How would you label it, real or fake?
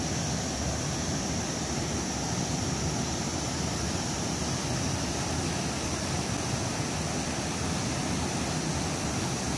real